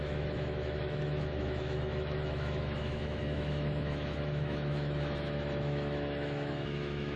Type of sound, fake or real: fake